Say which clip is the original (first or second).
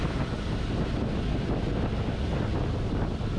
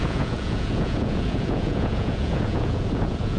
first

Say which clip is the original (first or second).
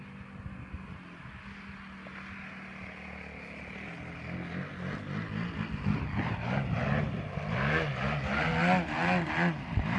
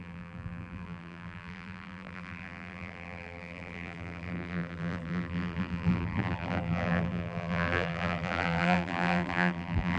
first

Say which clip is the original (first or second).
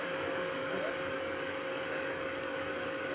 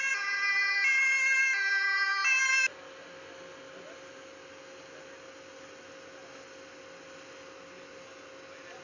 second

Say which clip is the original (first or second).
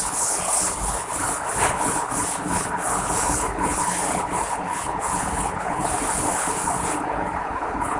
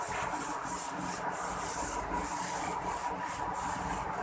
second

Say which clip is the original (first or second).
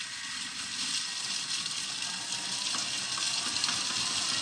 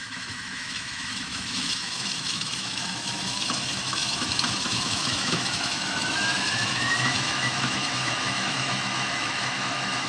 first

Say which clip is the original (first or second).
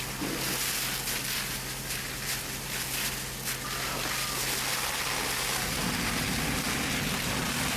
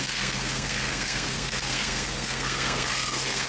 first